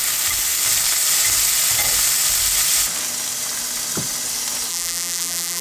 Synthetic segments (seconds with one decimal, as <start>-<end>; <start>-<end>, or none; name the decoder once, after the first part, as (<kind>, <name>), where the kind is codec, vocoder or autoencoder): 4.7-5.6 (vocoder, BigVGAN v2)